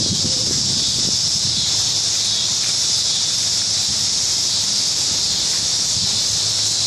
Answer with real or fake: real